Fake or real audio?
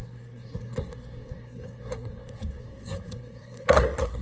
fake